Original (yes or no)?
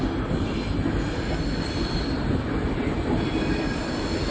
yes